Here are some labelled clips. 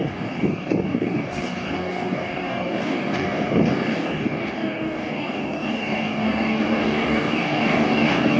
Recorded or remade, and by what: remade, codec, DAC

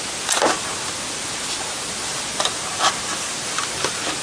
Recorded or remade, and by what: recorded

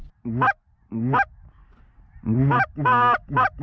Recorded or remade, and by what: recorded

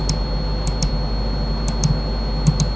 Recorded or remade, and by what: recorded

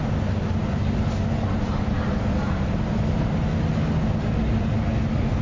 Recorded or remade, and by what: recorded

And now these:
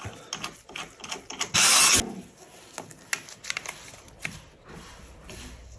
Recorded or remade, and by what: recorded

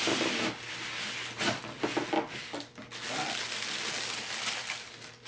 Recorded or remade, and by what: recorded